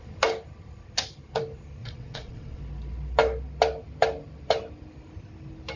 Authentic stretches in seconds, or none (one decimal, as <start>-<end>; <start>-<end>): 0.0-1.8; 2.6-5.8